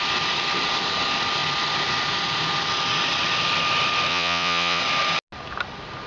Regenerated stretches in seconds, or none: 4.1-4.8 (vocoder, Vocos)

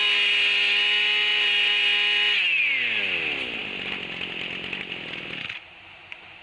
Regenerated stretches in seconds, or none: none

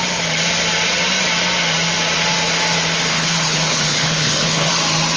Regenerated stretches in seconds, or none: 3.1-4.7 (codec, HILCodec)

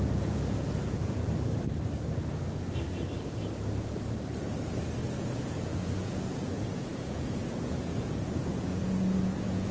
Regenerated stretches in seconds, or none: 0.0-1.2 (vocoder, Vocos); 5.2-9.7

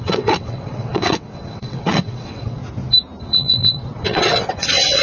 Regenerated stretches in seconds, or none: 0.0-2.6 (vocoder, WaveNeXt); 3.2-5.0